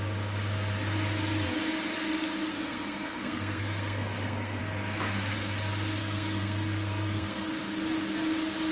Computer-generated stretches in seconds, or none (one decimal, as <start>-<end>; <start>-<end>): 2.5-4.6; 6.0-7.5